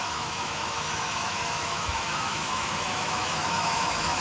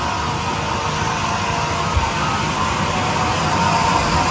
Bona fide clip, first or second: second